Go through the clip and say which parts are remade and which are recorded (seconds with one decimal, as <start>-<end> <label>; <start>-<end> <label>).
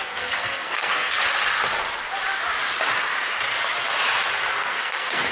0.0-1.2 remade; 1.2-4.4 recorded; 4.4-5.3 remade